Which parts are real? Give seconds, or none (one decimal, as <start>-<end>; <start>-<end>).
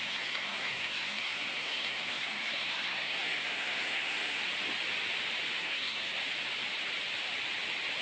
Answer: 4.4-5.6; 6.2-8.0